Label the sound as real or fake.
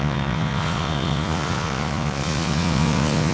fake